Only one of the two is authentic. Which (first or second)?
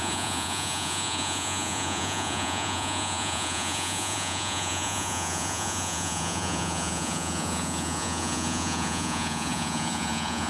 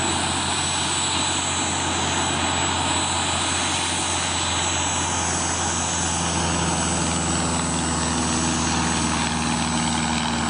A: second